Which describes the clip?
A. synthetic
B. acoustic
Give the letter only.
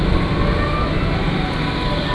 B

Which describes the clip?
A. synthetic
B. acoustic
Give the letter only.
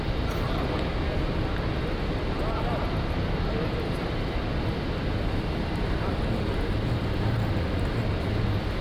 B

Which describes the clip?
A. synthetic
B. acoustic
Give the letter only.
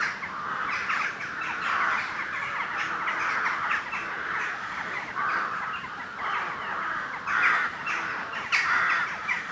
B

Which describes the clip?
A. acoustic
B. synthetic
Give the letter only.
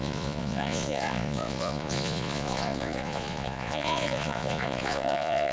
B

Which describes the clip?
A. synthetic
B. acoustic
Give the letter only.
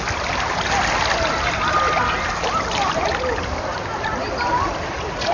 B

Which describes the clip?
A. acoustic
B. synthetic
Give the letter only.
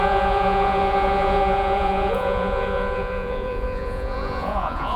B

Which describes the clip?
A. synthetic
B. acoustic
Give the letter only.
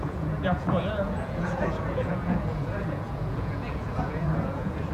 A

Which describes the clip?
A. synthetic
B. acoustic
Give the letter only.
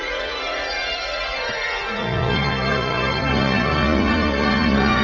A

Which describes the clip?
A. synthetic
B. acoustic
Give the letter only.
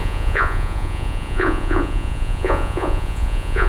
A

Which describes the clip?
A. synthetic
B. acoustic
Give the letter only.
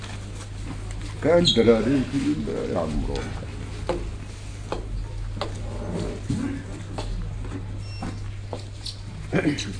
B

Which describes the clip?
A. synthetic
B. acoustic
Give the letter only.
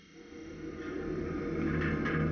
B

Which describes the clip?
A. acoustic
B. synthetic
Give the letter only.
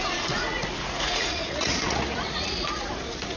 B